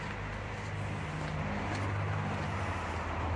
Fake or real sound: real